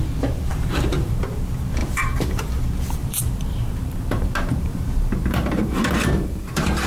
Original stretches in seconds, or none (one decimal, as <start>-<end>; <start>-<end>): 0.0-0.5; 1.2-1.8; 2.5-3.0